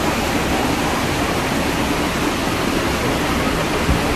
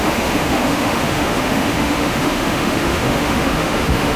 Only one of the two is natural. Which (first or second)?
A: first